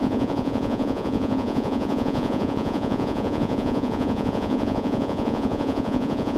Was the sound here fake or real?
fake